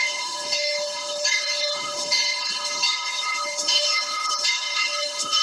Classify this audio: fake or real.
fake